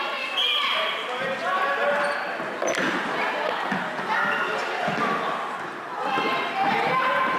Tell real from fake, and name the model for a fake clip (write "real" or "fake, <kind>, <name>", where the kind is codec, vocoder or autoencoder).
real